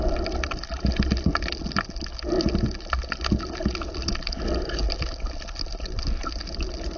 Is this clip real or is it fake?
real